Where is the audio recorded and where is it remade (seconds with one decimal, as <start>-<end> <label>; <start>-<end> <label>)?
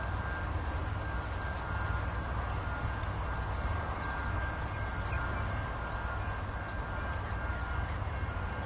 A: 0.0-8.7 recorded